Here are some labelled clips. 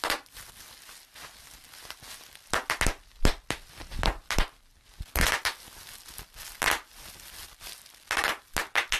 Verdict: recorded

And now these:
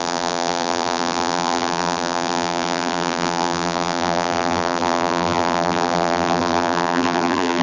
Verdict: remade